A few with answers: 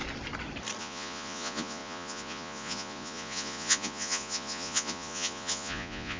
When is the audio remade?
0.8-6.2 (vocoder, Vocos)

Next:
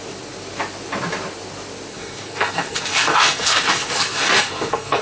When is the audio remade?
1.9-5.0 (codec, SNAC)